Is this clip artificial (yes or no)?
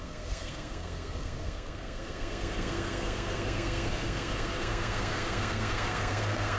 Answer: yes